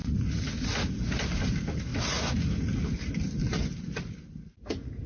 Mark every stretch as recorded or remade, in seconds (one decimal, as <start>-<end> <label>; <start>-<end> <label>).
0.0-5.1 recorded